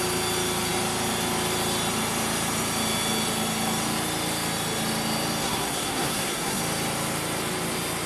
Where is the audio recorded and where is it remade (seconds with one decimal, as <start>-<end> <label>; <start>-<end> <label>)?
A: 0.0-5.4 recorded; 5.4-6.6 remade; 6.6-8.1 recorded